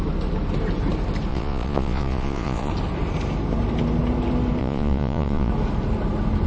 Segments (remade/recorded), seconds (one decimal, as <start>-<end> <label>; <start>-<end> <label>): 0.0-1.3 recorded; 1.3-2.7 remade; 2.7-4.6 recorded; 4.6-5.5 remade; 5.5-6.5 recorded